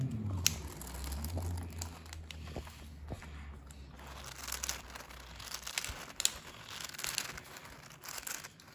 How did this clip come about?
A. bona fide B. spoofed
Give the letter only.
A